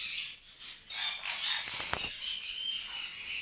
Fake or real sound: real